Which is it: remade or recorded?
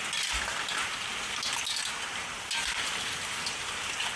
recorded